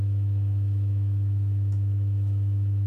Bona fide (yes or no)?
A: no